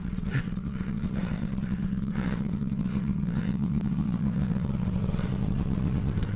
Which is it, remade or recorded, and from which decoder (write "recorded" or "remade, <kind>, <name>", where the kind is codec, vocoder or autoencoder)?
remade, vocoder, WaveNeXt